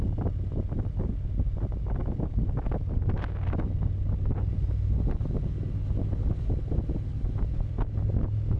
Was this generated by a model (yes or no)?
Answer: no